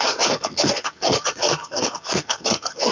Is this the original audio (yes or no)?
no